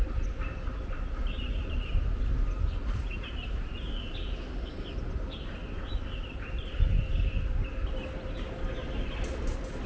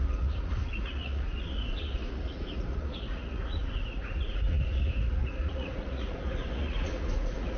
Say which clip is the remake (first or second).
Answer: second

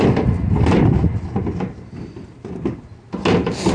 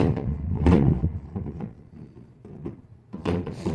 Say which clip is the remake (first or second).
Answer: second